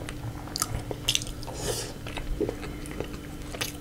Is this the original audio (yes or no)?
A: yes